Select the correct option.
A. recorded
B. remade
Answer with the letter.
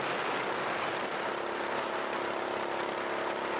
A